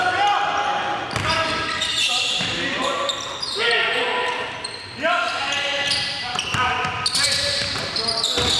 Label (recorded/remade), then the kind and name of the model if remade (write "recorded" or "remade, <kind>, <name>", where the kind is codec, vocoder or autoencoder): recorded